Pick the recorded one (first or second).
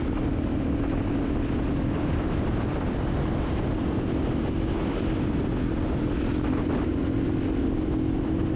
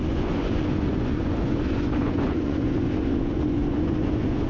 first